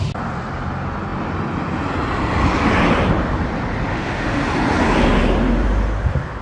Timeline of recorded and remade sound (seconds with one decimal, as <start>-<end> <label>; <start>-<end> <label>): 0.0-3.9 recorded; 3.9-4.4 remade; 4.4-6.4 recorded